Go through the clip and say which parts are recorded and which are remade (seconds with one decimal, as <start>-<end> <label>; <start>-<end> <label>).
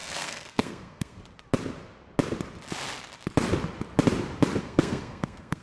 0.0-1.2 remade; 1.2-4.6 recorded; 4.6-5.6 remade